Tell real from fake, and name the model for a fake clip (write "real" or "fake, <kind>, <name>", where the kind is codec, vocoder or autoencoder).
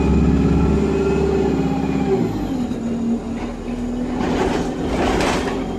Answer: real